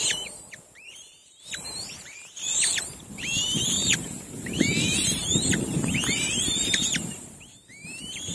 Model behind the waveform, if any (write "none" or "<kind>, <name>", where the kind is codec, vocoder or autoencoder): vocoder, BigVGAN v2